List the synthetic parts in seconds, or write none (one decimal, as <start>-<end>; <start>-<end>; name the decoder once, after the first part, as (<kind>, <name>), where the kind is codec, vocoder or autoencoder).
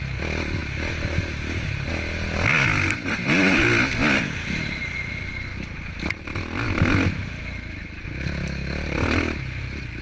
none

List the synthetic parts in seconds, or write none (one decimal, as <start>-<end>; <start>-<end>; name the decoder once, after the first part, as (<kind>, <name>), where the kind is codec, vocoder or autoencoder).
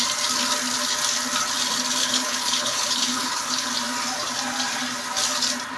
2.0-3.7 (codec, HILCodec)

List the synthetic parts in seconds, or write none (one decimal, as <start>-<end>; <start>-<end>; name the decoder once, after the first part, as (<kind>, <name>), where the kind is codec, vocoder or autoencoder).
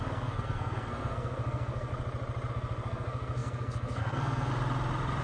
0.0-1.9 (codec, SNAC); 2.5-4.5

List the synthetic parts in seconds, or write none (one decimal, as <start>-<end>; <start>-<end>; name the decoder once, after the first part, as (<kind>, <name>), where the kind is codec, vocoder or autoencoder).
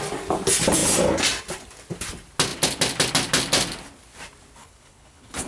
4.6-5.5 (codec, HILCodec)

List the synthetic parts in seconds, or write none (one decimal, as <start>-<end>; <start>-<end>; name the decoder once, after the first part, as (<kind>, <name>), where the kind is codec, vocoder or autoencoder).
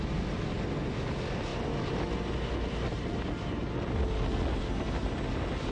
none